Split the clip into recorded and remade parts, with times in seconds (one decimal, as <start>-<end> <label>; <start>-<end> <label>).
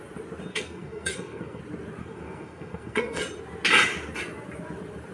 0.0-0.5 recorded; 0.5-1.6 remade; 1.6-2.0 recorded; 2.0-3.2 remade; 3.2-5.1 recorded